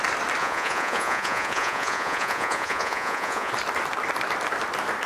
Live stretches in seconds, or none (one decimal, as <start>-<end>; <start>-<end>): 0.0-0.4; 3.5-5.1